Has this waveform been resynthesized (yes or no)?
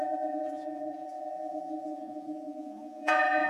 yes